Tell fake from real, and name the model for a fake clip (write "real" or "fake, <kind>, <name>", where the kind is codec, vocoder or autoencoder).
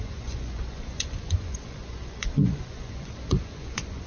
fake, vocoder, Vocos